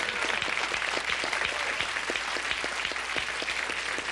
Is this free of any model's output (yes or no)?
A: yes